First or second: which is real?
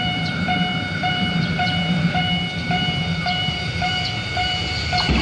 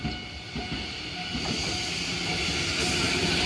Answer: second